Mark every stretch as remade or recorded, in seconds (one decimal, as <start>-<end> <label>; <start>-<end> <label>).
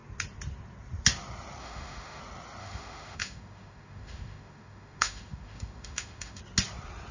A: 0.0-1.6 recorded; 1.6-2.2 remade; 2.2-2.6 recorded; 2.6-6.4 remade; 6.4-7.1 recorded